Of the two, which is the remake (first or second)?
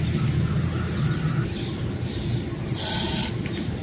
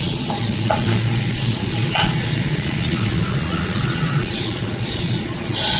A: second